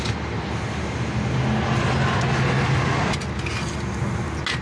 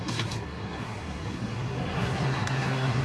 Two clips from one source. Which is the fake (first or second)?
second